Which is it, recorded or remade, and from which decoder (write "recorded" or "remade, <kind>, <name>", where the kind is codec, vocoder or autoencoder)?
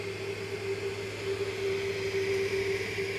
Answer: recorded